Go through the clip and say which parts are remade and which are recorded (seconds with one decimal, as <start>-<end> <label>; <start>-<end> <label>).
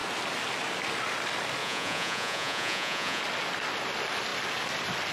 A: 0.0-1.6 recorded; 1.6-3.2 remade; 3.2-5.1 recorded